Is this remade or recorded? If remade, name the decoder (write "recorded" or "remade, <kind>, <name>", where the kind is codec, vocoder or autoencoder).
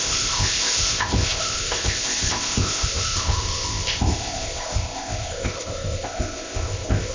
remade, codec, ZipCodec